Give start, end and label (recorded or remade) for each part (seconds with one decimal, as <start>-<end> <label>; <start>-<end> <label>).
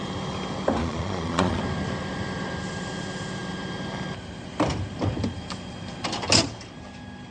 0.0-0.8 recorded; 0.8-1.6 remade; 1.6-7.3 recorded